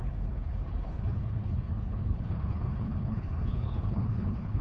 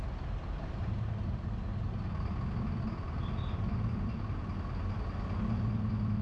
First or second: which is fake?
first